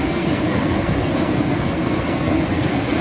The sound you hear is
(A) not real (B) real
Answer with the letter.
A